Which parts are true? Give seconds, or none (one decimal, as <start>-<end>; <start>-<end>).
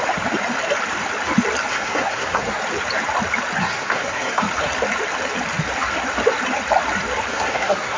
0.0-1.7; 2.6-3.6; 4.4-7.3